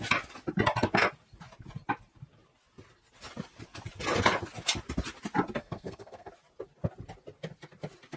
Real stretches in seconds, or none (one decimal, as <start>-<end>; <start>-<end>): 0.0-5.6; 6.3-8.2